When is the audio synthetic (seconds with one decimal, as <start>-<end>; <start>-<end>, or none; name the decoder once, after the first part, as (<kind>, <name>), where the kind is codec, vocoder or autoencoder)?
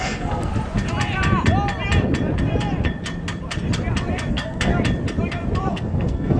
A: 0.0-0.5 (codec, SNAC); 4.3-4.7; 5.7-6.4